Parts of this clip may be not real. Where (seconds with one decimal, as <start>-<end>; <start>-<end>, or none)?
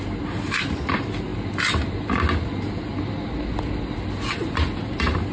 none